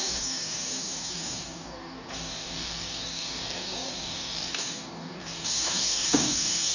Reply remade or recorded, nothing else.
remade